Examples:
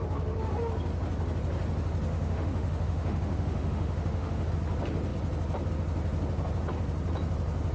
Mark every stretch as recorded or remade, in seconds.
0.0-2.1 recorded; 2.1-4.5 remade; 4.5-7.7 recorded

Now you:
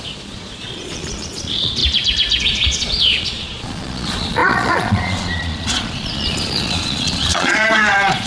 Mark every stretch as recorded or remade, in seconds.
0.0-1.8 remade; 1.8-2.4 recorded; 2.4-8.3 remade

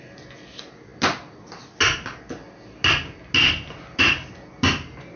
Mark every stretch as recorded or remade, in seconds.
0.0-5.2 recorded